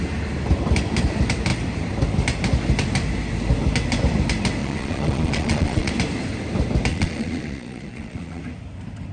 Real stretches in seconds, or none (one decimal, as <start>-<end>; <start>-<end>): 0.0-4.6; 5.9-6.9; 8.4-9.1